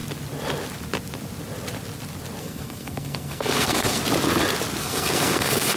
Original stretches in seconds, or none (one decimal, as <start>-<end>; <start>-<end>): 0.0-2.4; 4.0-4.8